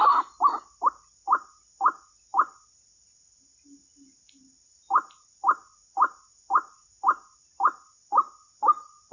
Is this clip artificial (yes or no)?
no